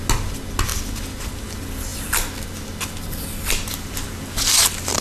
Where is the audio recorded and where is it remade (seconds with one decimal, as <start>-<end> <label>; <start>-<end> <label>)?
0.0-5.0 recorded

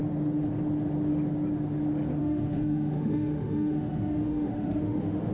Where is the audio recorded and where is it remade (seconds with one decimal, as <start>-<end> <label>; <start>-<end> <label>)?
0.0-2.2 recorded; 2.2-5.3 remade

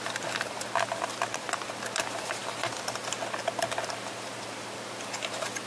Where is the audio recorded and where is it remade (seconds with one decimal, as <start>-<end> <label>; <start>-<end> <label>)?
0.0-5.7 recorded

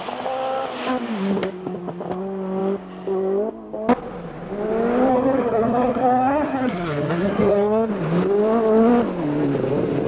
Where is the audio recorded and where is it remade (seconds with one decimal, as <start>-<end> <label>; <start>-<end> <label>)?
0.0-5.1 recorded; 5.1-7.9 remade; 7.9-10.1 recorded

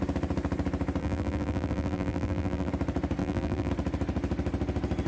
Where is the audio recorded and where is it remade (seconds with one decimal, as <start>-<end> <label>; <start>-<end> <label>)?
0.0-1.0 recorded; 1.0-2.7 remade; 2.7-3.2 recorded; 3.2-3.7 remade; 3.7-5.1 recorded

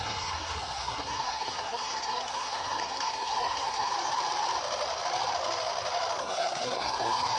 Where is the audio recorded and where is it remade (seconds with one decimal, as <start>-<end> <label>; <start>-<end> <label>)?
0.0-3.9 remade; 3.9-6.2 recorded; 6.2-7.4 remade